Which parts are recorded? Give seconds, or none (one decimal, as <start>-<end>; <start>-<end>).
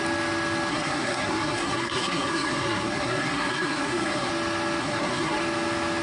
0.0-0.7; 4.3-4.8; 5.4-6.0